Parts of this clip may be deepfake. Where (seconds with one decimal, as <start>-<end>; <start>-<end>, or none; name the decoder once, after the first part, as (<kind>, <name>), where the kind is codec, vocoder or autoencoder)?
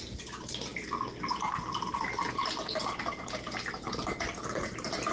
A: none